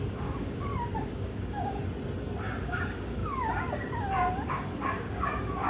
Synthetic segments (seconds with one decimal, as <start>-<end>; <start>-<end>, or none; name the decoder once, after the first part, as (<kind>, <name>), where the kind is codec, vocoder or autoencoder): 0.0-1.8 (codec, DAC); 2.6-3.2; 4.5-5.7